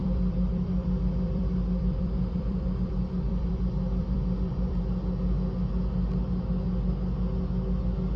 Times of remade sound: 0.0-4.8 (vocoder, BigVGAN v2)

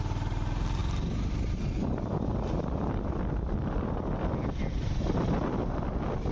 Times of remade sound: none